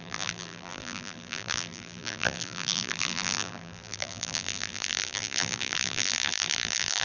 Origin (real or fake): fake